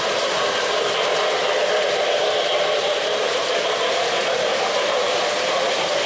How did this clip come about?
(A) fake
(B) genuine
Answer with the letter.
A